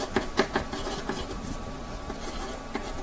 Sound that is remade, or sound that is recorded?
remade